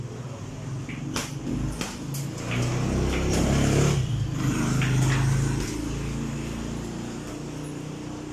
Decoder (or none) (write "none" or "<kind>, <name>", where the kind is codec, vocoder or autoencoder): none